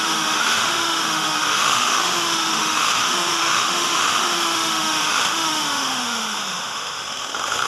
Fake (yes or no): yes